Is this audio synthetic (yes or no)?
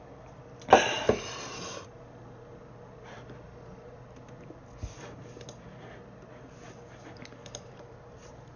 no